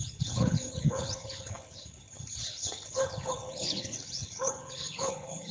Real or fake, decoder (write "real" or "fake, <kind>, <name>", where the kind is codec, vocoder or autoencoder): fake, codec, HILCodec